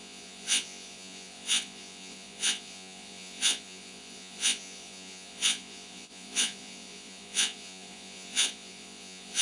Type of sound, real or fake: fake